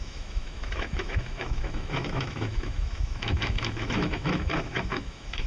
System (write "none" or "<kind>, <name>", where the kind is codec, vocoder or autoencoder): autoencoder, DAC-VAE